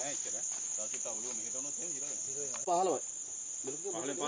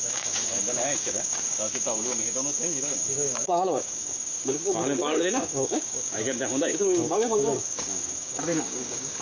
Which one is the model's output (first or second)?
second